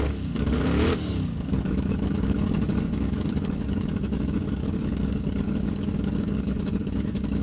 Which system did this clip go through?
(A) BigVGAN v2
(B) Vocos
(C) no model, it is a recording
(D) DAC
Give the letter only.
D